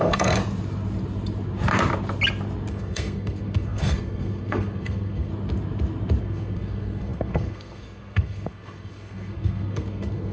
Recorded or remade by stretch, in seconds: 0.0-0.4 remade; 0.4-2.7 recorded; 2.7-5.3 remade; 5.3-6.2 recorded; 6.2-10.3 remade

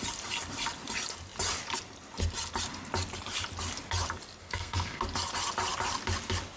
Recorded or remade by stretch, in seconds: 0.0-4.4 recorded; 4.4-5.0 remade; 5.0-6.6 recorded

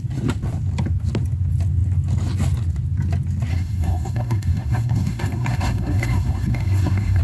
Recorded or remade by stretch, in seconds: 0.0-3.5 recorded; 3.5-7.2 remade

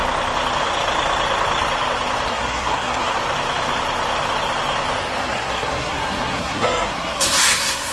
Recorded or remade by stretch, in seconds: 0.0-2.3 recorded; 2.3-3.2 remade; 3.2-5.2 recorded; 5.2-7.9 remade